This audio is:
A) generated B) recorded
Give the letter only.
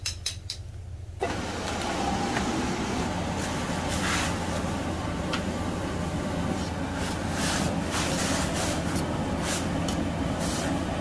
B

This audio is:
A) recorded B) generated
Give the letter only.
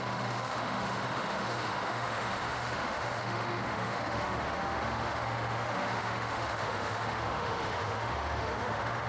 B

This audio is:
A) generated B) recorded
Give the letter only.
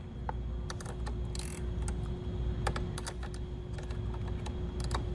B